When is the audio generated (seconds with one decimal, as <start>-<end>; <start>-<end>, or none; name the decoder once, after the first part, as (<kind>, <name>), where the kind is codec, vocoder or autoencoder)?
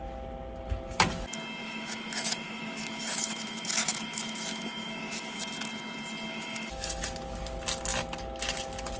1.6-5.4 (autoencoder, DAC-VAE); 6.3-7.0